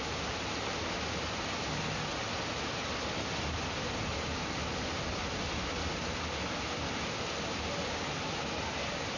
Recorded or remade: recorded